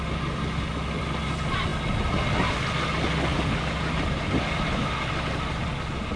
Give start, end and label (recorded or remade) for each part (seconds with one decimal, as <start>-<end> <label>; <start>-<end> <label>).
0.0-6.2 recorded